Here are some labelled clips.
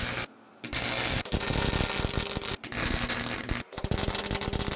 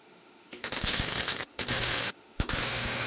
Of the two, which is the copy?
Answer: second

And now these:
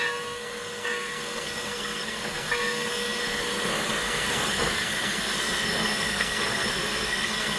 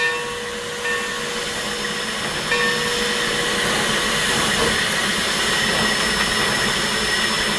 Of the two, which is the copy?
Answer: first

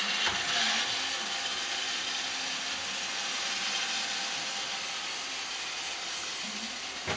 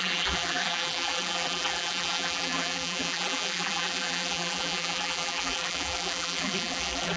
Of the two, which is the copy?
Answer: second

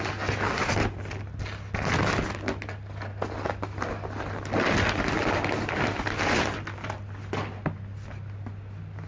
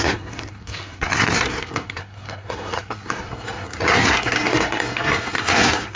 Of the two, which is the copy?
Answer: second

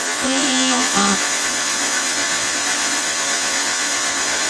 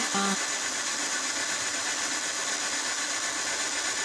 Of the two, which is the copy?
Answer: first